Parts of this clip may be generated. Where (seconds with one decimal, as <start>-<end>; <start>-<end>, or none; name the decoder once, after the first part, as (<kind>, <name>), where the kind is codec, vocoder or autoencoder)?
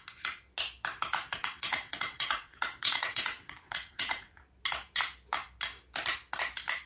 1.4-4.4 (vocoder, WaveNeXt)